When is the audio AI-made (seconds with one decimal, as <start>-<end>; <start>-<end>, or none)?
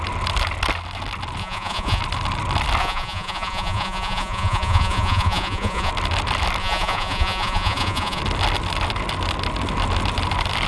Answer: 1.4-2.0; 2.8-5.9; 6.6-8.2